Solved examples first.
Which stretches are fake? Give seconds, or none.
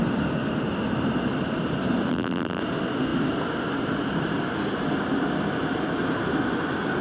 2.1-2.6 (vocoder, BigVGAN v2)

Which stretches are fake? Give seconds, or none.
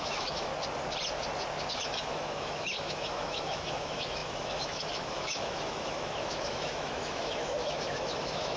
0.0-0.5 (autoencoder, DAC-VAE); 1.7-8.6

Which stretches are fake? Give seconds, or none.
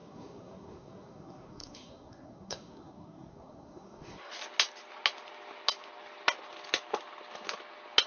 0.0-4.3 (codec, SNAC)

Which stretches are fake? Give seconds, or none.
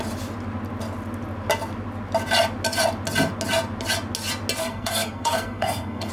4.6-6.1 (codec, SNAC)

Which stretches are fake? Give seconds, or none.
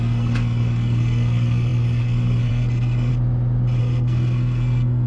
0.0-3.1 (codec, SNAC); 3.8-5.1